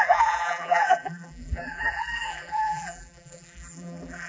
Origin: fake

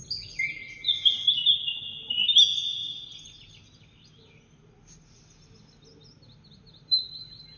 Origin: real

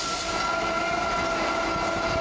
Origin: real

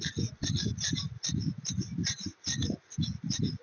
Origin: real